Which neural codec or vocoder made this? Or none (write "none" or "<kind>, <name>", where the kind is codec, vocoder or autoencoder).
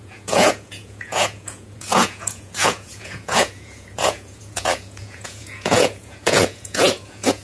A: vocoder, Vocos